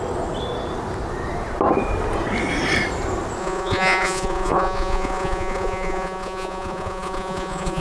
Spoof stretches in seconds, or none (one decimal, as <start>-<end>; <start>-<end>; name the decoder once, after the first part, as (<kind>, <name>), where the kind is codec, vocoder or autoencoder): 3.4-7.8 (vocoder, Vocos)